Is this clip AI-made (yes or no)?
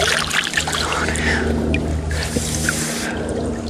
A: no